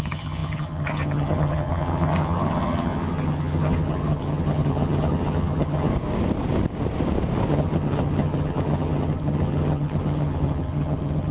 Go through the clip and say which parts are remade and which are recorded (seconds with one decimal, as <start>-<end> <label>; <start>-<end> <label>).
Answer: 0.0-5.9 remade; 5.9-7.5 recorded; 7.5-11.3 remade